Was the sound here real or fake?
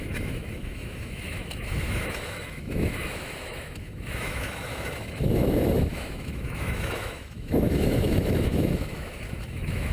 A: fake